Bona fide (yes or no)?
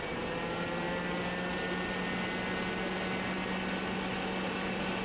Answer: yes